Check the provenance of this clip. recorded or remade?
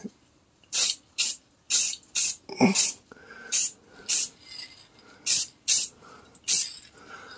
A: recorded